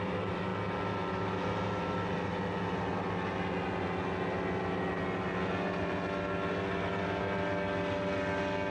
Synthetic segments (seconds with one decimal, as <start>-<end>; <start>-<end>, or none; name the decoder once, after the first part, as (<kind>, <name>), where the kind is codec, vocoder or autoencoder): none